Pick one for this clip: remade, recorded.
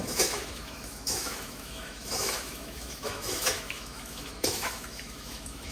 remade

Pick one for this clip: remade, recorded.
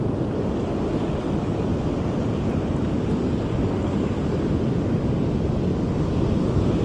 recorded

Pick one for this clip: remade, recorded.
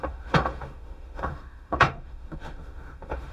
remade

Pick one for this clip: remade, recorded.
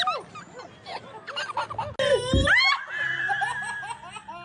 recorded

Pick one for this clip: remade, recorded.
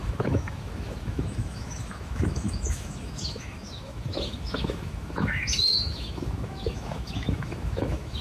remade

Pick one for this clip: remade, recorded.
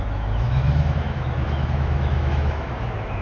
remade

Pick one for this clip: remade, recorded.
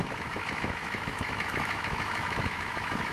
remade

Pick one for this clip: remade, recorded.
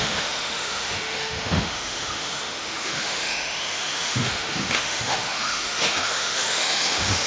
remade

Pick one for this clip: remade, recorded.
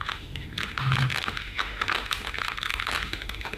remade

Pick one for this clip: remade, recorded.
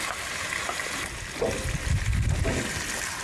recorded